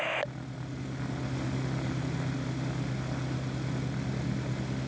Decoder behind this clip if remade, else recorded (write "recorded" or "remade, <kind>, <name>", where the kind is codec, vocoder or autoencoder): recorded